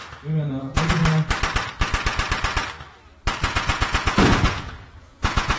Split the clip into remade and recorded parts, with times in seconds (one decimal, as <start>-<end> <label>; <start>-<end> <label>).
0.0-0.6 recorded; 0.6-1.0 remade; 1.0-3.4 recorded; 3.4-5.6 remade